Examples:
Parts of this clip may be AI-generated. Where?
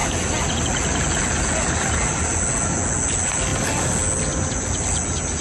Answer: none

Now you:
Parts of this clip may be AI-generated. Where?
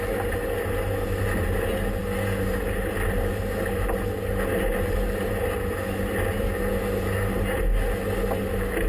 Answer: none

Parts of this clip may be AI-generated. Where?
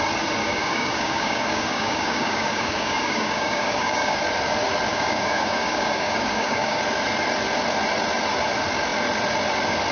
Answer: 0.4-4.2 (codec, DAC); 4.9-6.8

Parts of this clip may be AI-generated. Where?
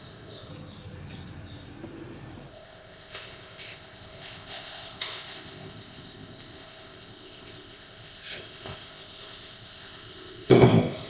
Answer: 0.0-0.5 (codec, ZipCodec); 2.5-11.1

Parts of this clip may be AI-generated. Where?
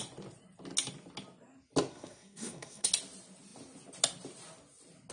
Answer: 1.9-2.9 (codec, SNAC)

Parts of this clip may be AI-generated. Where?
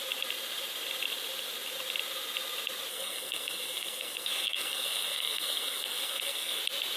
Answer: 2.9-6.6 (codec, SNAC)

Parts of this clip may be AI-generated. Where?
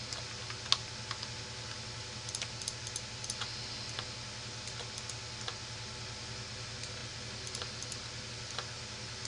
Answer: none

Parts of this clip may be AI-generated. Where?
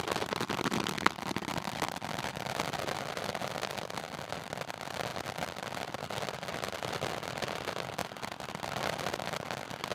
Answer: none